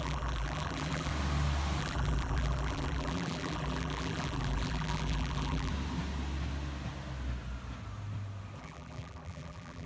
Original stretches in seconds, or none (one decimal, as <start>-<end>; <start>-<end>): 1.1-1.8; 5.7-8.6